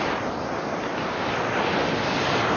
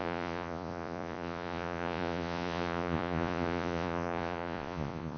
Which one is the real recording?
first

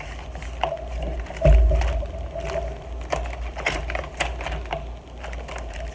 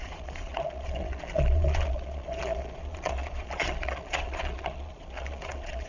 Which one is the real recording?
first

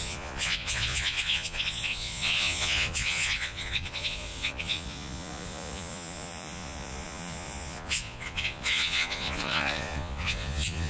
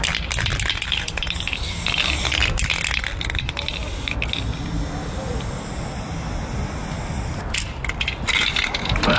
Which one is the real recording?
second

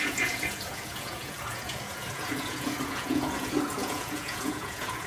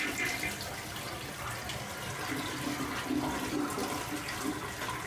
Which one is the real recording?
second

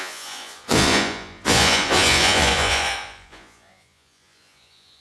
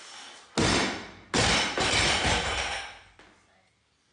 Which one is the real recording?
second